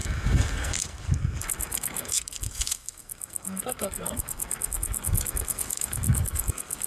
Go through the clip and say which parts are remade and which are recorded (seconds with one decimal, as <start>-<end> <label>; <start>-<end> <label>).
0.0-6.9 remade